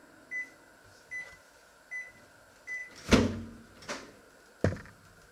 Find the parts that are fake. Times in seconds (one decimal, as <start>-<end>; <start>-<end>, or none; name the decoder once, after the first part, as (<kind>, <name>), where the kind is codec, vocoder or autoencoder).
none